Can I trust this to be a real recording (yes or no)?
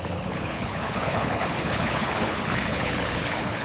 no